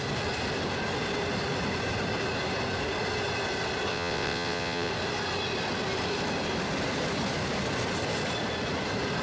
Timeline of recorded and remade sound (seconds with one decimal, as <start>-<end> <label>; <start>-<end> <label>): 0.0-3.9 recorded; 3.9-4.9 remade; 4.9-9.2 recorded